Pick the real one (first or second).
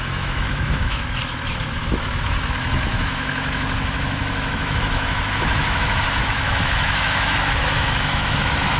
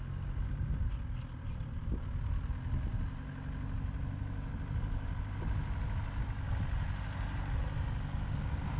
second